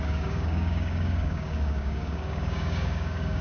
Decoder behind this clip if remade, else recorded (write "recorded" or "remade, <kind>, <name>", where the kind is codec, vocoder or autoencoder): remade, codec, DAC